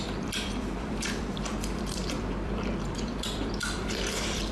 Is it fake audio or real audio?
fake